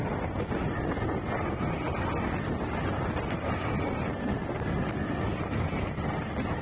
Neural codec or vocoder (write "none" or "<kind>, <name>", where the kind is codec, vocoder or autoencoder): none